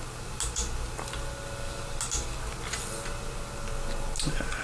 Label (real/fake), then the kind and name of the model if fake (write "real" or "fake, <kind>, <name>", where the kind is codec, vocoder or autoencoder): real